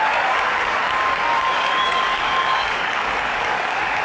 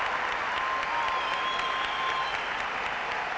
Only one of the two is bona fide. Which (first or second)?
second